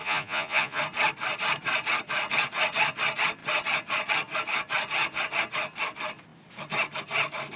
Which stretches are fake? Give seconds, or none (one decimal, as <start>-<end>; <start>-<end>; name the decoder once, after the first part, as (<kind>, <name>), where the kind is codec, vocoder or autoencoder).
0.0-0.8 (vocoder, Vocos)